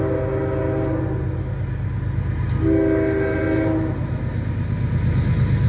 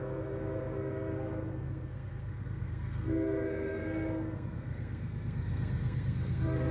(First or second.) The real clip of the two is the first